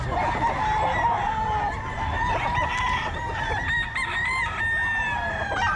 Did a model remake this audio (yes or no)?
no